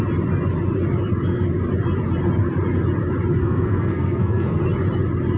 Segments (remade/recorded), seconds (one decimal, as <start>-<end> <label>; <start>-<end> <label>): 0.0-3.4 recorded; 3.4-4.6 remade; 4.6-5.4 recorded